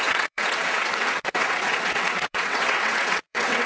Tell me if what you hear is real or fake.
fake